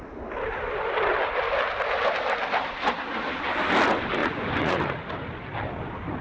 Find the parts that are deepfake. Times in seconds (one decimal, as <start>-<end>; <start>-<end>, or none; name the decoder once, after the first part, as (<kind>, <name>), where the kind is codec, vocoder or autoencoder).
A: 4.2-4.8 (vocoder, Vocos)